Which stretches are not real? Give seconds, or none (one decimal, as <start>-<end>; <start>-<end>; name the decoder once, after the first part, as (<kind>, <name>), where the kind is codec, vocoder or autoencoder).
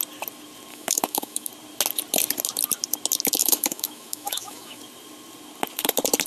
0.7-1.5 (autoencoder, DAC-VAE); 3.4-4.8